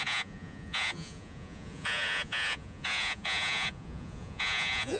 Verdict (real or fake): fake